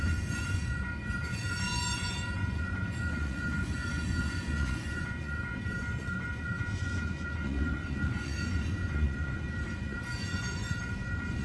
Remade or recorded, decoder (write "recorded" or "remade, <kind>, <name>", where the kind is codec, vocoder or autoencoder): remade, vocoder, Vocos